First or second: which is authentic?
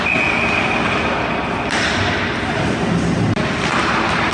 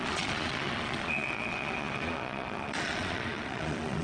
first